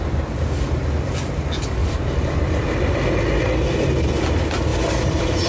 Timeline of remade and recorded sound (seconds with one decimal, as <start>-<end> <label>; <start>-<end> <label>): 0.0-4.7 recorded; 4.7-5.5 remade